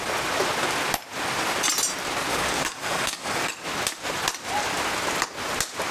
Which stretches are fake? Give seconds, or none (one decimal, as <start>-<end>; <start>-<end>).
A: 2.3-3.5